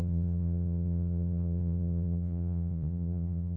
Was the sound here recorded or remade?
remade